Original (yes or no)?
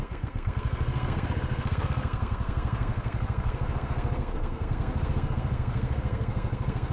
no